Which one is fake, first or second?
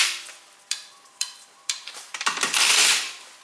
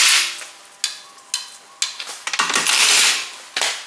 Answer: first